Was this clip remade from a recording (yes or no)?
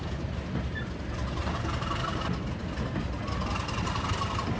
no